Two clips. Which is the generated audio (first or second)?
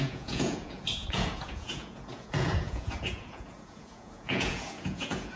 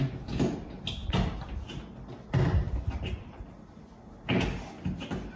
first